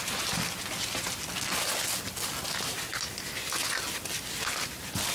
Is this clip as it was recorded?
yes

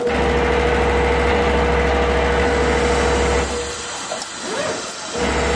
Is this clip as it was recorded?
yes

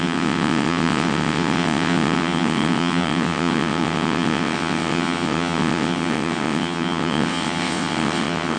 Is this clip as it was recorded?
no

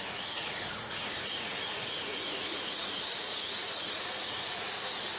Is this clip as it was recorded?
no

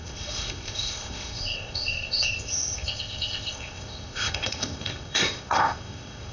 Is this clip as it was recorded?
no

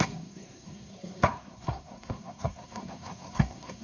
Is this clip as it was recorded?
no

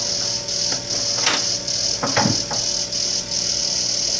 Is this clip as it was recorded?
yes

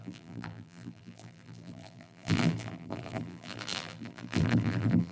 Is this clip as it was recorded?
no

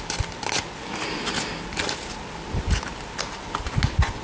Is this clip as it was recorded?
yes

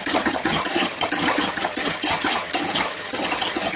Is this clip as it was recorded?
no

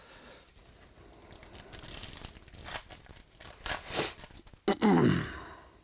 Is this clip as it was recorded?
yes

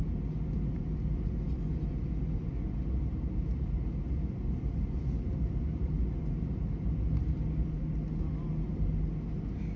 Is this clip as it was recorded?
yes